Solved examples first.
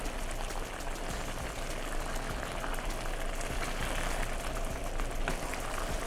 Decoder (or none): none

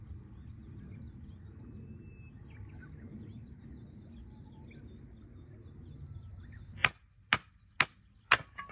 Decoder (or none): none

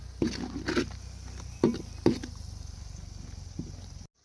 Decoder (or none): none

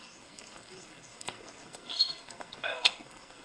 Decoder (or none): codec, SNAC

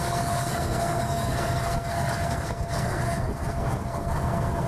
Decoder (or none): codec, SNAC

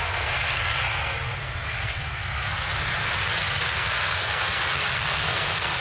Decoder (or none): codec, SNAC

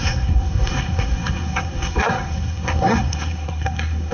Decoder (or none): codec, SNAC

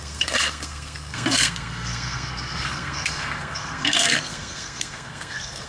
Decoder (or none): codec, SNAC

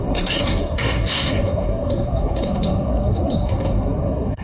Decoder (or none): codec, SNAC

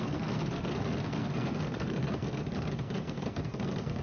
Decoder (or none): codec, SNAC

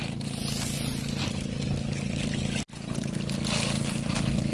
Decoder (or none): none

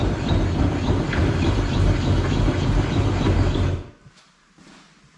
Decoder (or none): none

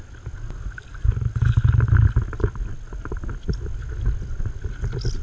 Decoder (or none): none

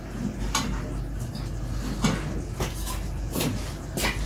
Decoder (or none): none